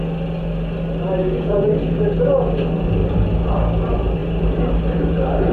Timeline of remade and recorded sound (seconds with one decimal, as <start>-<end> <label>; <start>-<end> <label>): 0.0-1.2 recorded; 1.2-1.7 remade; 1.7-5.5 recorded